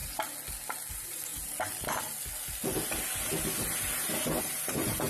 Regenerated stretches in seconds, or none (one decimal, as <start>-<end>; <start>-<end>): 0.9-1.3; 4.4-5.1